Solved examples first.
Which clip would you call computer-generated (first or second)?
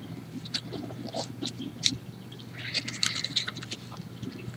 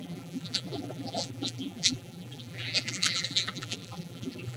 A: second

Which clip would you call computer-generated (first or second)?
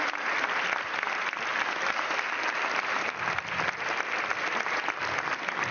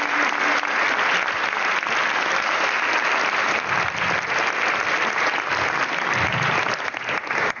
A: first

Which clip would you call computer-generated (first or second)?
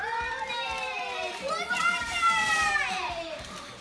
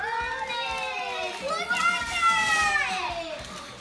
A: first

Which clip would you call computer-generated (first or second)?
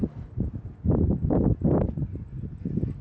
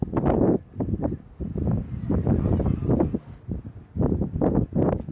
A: first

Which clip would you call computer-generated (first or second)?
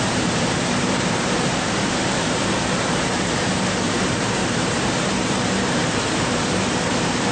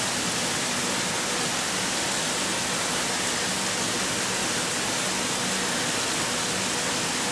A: first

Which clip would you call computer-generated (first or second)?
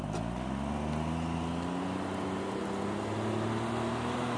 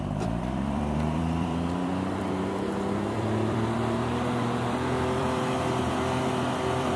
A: second